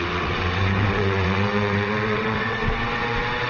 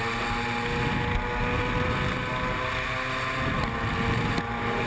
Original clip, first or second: second